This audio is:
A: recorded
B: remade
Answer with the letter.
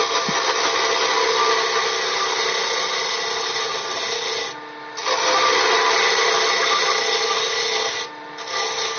A